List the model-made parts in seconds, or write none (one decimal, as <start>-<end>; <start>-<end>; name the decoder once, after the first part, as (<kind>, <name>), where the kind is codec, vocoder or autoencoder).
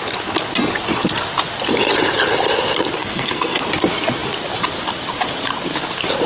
3.0-3.6 (codec, SNAC)